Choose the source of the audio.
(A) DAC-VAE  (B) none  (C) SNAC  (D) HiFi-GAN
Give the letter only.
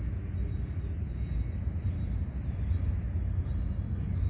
B